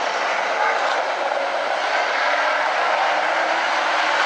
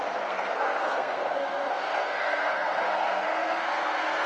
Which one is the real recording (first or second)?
first